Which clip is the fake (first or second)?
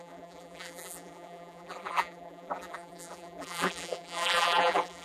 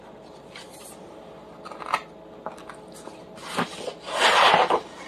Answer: first